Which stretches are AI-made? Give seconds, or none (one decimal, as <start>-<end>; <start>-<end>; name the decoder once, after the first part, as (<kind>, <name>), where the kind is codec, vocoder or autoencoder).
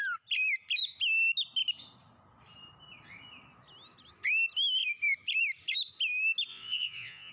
6.5-7.3 (vocoder, Vocos)